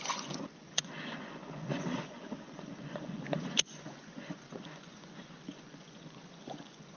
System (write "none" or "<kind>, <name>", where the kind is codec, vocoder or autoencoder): vocoder, Vocos